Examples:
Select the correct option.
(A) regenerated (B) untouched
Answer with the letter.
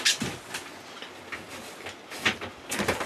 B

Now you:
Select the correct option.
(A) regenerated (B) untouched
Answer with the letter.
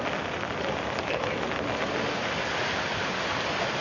B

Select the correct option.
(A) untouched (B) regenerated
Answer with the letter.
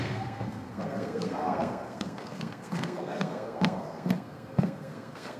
B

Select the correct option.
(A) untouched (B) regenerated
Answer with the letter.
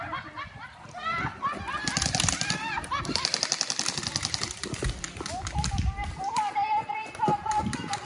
A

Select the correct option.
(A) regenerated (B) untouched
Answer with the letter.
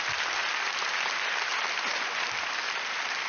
B